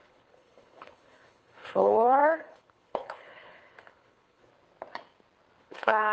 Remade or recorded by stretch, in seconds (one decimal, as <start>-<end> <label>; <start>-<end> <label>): 0.0-4.5 remade; 4.5-5.6 recorded; 5.6-6.1 remade